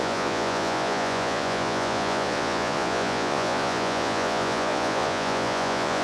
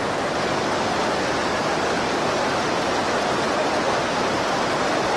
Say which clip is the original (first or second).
second